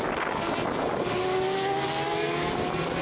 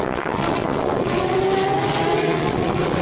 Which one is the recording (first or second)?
first